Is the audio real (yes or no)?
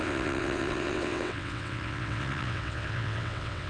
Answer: no